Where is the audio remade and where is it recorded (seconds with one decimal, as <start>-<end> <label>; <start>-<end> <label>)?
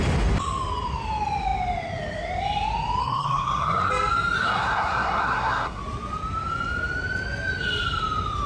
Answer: 0.0-3.0 recorded; 3.0-3.9 remade; 3.9-4.4 recorded; 4.4-5.8 remade; 5.8-8.5 recorded